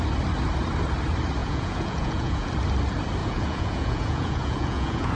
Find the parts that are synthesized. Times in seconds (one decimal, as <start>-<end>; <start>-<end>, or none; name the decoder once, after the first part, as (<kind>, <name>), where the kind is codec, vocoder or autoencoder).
1.4-2.5 (vocoder, Vocos); 3.2-5.1